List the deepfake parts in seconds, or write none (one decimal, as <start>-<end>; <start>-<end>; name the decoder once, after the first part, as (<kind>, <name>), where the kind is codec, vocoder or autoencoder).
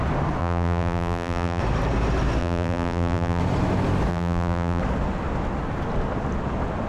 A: 0.4-1.6 (vocoder, BigVGAN v2); 2.4-3.4; 4.1-4.8